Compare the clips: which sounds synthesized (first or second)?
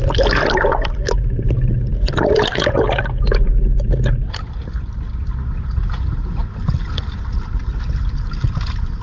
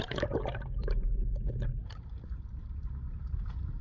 second